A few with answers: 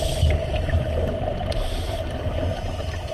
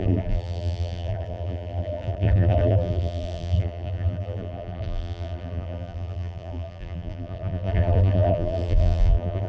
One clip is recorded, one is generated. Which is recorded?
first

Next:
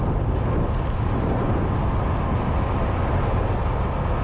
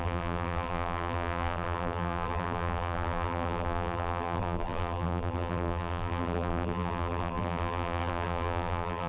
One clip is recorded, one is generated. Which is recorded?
first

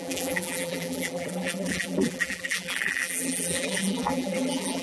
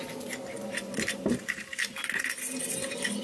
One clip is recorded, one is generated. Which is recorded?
second